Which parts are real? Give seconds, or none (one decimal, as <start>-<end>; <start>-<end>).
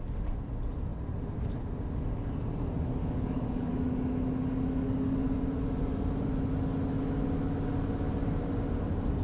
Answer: 0.0-3.0; 3.7-9.2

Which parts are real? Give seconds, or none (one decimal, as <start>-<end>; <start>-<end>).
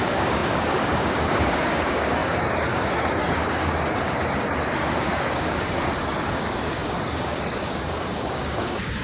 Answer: none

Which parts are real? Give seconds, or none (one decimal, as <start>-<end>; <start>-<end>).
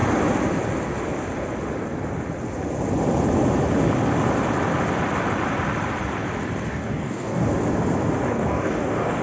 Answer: 0.0-6.7; 7.5-8.3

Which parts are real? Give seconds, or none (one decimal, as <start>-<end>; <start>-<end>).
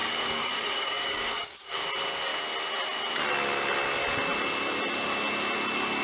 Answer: 1.8-6.0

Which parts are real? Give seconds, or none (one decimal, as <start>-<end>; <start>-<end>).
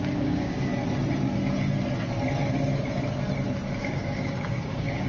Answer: 0.7-3.8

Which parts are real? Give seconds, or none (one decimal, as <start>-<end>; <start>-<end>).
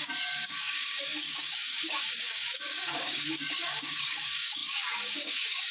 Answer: none